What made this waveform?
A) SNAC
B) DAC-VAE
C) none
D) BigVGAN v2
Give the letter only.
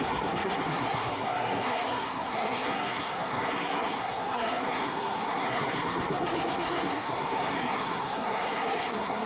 A